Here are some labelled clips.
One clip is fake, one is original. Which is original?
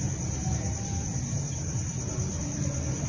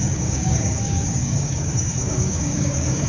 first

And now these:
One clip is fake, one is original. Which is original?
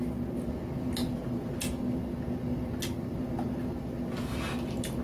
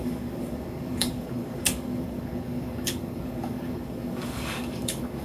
first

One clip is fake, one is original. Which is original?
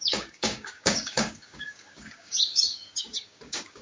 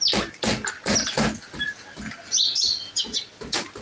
second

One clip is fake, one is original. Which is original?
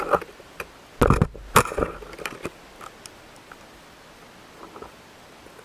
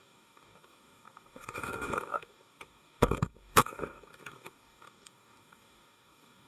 first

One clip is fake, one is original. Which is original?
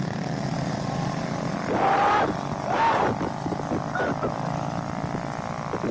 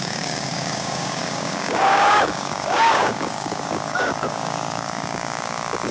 first